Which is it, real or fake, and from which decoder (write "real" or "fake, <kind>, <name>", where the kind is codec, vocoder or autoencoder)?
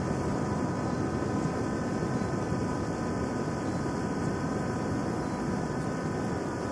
fake, vocoder, BigVGAN v2